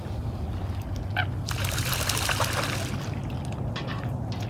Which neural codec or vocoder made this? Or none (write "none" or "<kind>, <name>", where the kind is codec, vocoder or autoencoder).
none